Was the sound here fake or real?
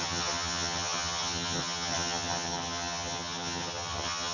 fake